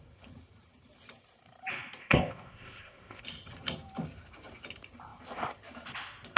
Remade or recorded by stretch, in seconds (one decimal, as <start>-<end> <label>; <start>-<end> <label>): 0.0-2.0 recorded; 2.0-3.2 remade; 3.2-6.4 recorded